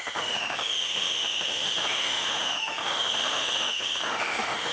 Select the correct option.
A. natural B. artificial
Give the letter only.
B